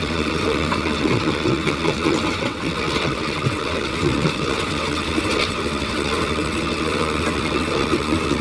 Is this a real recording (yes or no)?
no